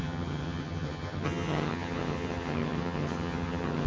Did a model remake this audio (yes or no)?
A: yes